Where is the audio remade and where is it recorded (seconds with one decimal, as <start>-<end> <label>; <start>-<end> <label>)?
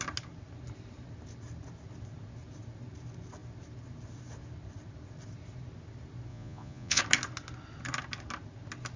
0.0-6.3 recorded; 6.3-7.0 remade; 7.0-9.0 recorded